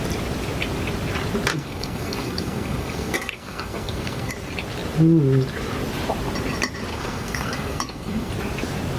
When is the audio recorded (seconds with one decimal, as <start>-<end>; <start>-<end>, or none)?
0.0-1.5; 4.3-6.9; 8.3-9.0